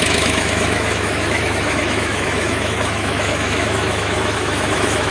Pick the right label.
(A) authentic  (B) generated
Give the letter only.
B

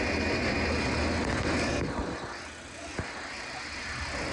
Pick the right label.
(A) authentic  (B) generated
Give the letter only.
A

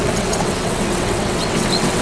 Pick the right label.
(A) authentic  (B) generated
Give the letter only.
B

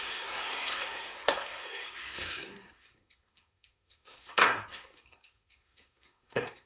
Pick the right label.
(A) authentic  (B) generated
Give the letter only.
B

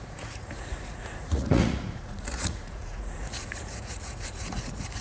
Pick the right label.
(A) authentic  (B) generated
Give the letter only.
B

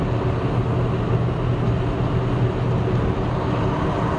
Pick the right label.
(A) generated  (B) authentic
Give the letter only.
B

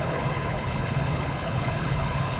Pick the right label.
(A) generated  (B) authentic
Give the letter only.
A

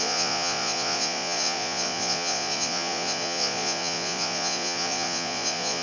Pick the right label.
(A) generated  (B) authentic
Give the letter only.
A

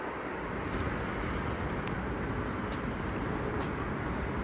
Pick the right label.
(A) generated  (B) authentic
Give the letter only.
B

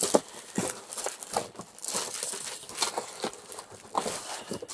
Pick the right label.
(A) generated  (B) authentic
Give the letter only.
B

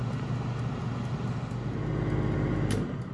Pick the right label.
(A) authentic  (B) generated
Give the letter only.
A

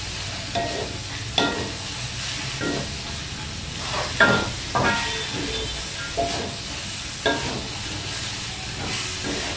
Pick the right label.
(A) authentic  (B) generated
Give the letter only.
A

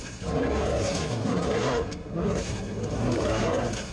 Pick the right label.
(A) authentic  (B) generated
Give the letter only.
B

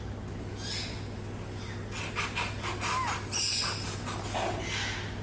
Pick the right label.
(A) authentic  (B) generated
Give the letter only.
A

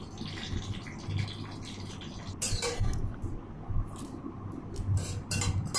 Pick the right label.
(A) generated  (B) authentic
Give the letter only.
B